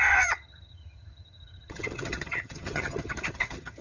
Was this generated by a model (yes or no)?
yes